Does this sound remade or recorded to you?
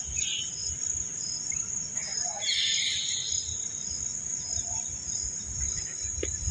recorded